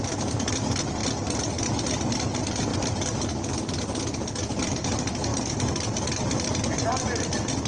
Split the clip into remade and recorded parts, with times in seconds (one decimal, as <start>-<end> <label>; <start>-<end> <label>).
0.0-2.7 recorded; 2.7-4.0 remade; 4.0-7.7 recorded